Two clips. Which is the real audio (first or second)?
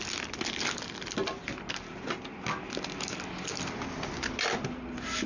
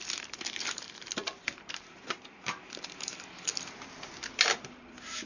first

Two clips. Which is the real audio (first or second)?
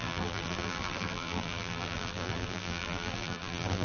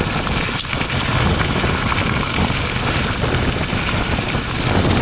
second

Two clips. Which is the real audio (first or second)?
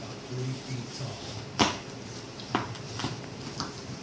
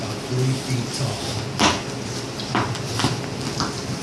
second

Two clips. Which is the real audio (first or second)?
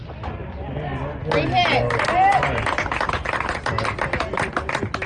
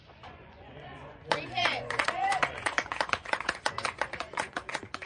first